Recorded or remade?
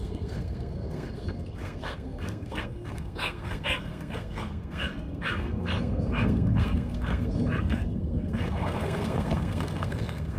remade